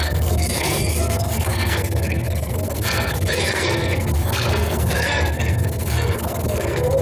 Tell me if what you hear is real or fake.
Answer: fake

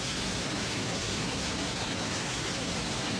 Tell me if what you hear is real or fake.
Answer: fake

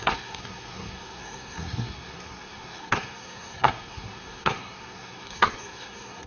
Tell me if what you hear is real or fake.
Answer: fake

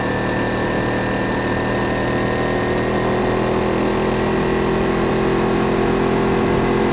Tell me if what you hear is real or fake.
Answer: real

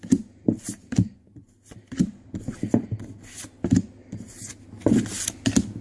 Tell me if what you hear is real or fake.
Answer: real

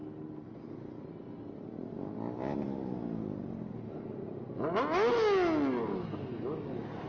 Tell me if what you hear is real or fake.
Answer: real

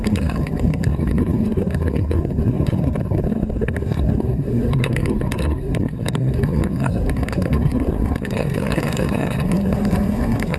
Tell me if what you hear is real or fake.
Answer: fake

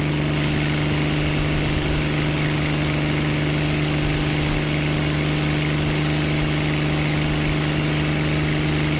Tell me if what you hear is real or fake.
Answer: real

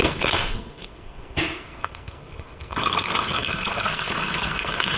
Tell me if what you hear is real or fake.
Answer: fake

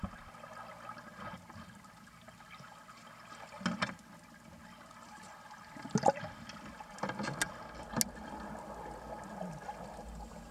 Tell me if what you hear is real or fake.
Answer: real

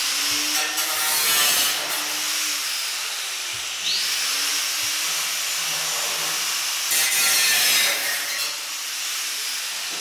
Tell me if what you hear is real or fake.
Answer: real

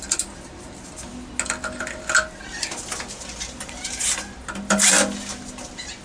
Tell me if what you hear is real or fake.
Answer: real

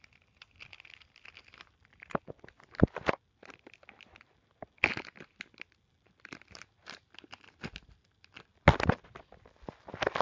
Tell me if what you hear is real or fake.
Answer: real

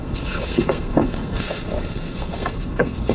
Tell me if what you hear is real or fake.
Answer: fake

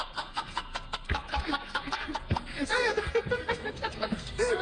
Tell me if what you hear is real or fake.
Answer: fake